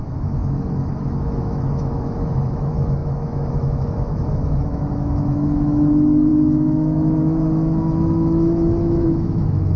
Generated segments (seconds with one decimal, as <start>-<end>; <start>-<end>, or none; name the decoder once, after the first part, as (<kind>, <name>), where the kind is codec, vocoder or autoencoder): 0.0-9.8 (autoencoder, DAC-VAE)